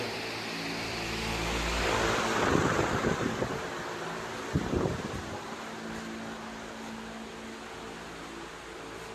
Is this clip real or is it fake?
real